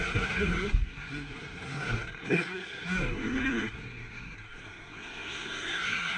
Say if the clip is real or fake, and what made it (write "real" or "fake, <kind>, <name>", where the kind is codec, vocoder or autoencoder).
fake, codec, SNAC